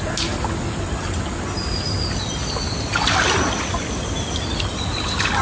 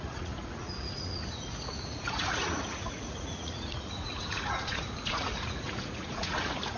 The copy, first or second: second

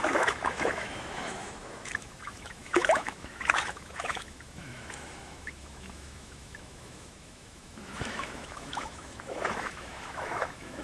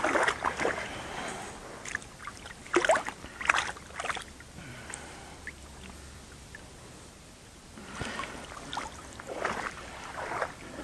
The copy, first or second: first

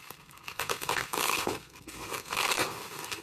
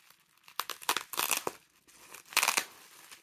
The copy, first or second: first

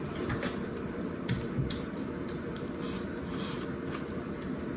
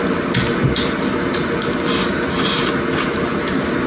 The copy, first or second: first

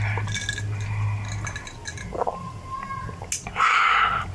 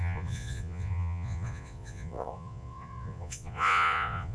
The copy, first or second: second